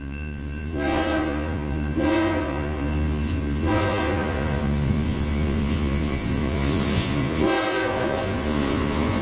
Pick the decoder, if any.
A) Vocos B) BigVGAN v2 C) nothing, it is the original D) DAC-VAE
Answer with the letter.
A